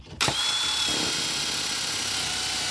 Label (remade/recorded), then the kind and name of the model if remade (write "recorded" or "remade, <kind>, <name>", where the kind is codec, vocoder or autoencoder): recorded